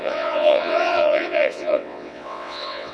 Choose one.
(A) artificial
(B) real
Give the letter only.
A